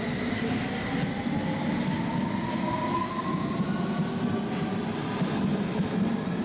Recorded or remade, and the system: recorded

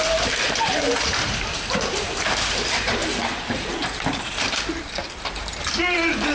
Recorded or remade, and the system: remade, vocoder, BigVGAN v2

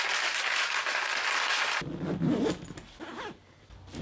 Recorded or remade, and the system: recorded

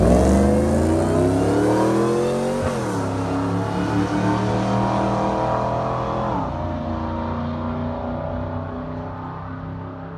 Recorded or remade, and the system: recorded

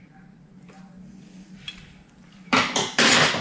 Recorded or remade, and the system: remade, vocoder, BigVGAN v2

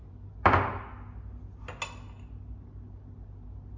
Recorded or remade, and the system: recorded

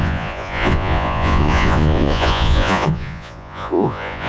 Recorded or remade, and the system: remade, vocoder, Vocos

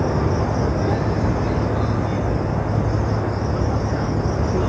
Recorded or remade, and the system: recorded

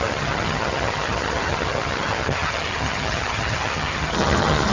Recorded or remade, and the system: remade, vocoder, HiFi-GAN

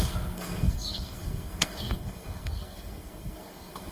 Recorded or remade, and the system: remade, codec, SNAC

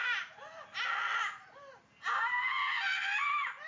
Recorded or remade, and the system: recorded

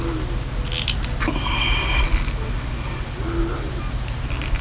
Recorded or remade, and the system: recorded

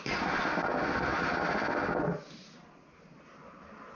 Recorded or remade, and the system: recorded